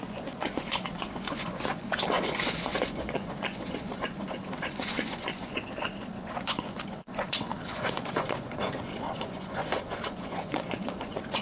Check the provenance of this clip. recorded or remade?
remade